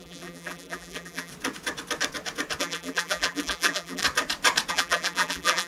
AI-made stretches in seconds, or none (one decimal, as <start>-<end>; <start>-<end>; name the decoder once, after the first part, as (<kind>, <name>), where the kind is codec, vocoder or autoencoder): 0.0-1.3 (vocoder, BigVGAN v2); 2.6-4.0; 4.7-5.7